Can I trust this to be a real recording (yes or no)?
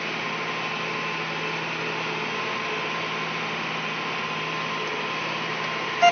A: yes